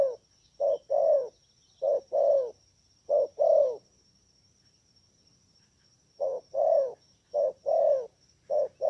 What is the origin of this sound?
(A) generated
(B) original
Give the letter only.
A